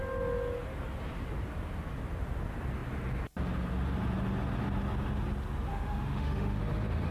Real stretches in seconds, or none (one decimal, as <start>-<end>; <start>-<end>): 0.0-5.7; 6.6-7.1